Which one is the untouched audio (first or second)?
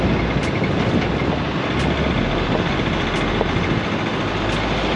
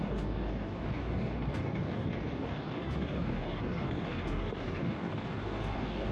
first